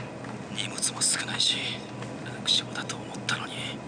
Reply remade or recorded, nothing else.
recorded